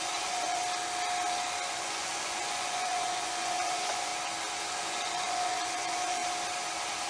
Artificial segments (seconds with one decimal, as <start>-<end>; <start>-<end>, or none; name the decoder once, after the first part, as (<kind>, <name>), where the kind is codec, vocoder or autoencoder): 0.0-0.6 (vocoder, Vocos); 1.7-4.1; 4.6-6.2